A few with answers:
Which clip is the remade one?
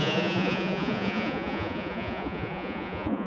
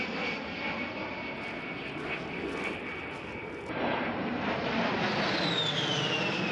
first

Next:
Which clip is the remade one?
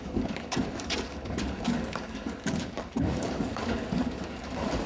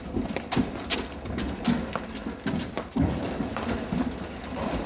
first